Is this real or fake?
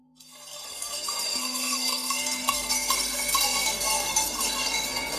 fake